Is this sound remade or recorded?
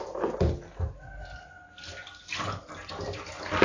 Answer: recorded